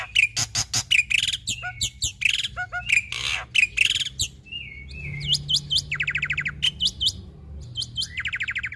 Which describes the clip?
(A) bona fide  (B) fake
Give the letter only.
A